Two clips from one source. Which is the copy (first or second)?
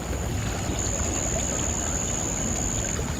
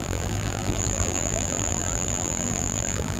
second